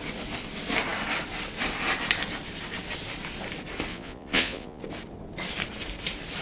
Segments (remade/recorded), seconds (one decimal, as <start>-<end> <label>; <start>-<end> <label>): 0.0-3.9 recorded; 3.9-4.8 remade; 4.8-6.4 recorded